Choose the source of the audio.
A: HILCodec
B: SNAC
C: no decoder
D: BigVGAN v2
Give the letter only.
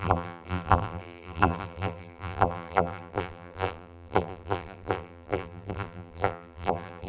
D